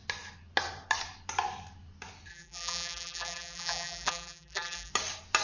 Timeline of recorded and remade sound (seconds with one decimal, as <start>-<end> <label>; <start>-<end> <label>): 0.0-2.3 recorded; 2.3-4.9 remade; 4.9-5.4 recorded